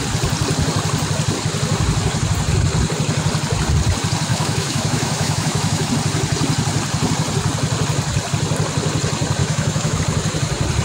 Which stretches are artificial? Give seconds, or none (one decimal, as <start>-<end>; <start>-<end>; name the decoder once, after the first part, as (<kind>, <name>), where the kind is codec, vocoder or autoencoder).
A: 4.3-5.9 (autoencoder, DAC-VAE); 9.4-10.0